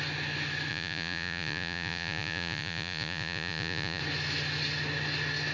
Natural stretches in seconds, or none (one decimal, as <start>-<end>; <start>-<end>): 0.0-0.7; 4.0-5.5